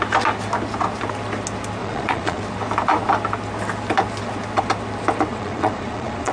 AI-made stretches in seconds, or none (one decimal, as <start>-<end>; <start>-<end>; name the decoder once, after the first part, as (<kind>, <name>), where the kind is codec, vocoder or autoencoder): 1.8-2.4 (vocoder, Vocos); 5.3-6.3

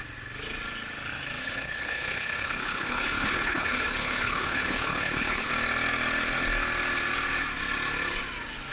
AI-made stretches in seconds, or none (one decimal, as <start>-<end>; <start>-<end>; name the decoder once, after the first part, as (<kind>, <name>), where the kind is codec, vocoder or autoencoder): 1.4-5.5 (codec, HILCodec)

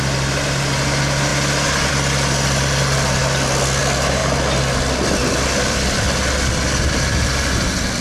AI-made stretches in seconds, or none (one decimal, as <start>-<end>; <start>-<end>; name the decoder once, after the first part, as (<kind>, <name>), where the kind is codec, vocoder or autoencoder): none

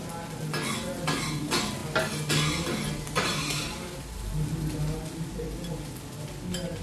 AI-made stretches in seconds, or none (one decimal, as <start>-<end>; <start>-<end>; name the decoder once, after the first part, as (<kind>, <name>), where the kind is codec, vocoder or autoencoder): none

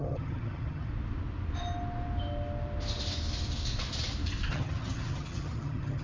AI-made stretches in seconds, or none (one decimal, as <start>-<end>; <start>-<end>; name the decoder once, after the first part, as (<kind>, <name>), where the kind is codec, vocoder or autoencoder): 0.0-0.9 (vocoder, HiFi-GAN); 4.5-6.0

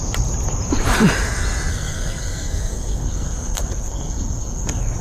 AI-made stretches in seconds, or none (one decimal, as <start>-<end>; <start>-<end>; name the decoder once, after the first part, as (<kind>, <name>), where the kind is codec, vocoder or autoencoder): 1.7-5.0 (codec, SNAC)

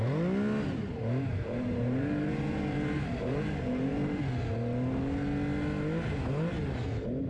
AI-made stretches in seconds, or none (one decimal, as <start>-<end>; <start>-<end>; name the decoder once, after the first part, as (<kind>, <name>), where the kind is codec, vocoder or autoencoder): 1.3-4.2 (vocoder, BigVGAN v2)

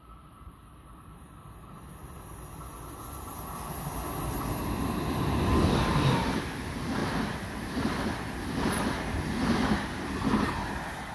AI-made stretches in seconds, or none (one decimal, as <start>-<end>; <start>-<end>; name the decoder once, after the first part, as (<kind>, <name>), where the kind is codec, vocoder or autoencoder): none